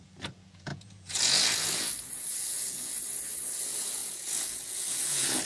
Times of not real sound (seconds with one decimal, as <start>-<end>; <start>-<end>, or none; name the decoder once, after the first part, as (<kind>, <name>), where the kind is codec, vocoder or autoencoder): 0.0-5.4 (vocoder, Vocos)